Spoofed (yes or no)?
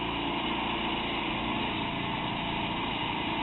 yes